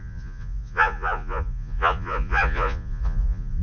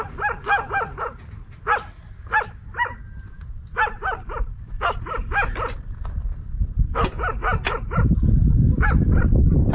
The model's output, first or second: first